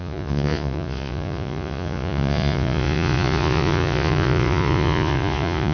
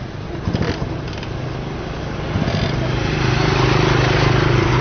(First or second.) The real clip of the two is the second